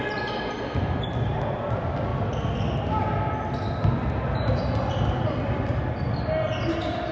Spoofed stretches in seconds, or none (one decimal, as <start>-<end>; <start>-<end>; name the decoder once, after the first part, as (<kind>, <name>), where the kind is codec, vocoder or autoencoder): none